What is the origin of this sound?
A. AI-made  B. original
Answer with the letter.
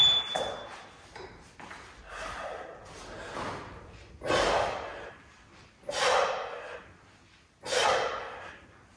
B